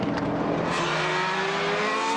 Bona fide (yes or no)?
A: yes